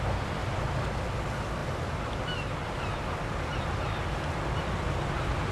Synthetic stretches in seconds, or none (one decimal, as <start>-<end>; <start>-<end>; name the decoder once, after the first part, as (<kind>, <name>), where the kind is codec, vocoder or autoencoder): none